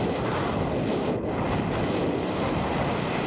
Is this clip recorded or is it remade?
recorded